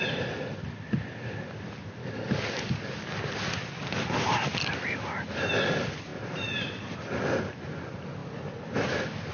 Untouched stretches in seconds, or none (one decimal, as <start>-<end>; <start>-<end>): 0.0-2.0; 3.1-9.3